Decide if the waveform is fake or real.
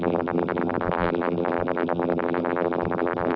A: fake